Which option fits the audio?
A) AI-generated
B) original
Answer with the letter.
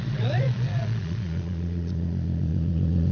A